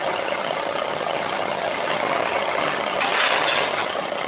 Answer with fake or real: fake